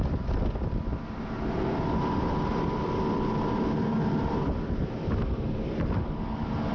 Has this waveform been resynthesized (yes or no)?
yes